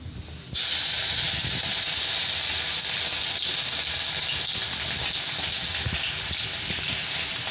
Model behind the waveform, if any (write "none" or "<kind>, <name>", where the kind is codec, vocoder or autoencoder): none